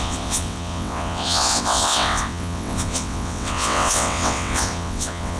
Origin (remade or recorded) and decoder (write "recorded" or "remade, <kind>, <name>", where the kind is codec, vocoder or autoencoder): remade, vocoder, WaveNeXt